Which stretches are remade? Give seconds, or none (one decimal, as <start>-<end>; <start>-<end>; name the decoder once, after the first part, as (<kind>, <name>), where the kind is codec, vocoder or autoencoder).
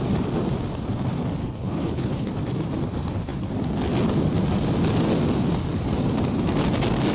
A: 1.4-2.3 (codec, HILCodec)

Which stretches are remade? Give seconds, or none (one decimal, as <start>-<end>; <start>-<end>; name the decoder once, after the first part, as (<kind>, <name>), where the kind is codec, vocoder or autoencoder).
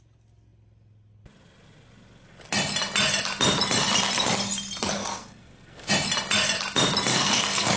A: 5.0-5.9 (codec, SNAC); 7.1-7.8